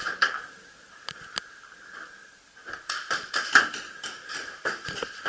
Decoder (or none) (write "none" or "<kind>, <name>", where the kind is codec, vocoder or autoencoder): none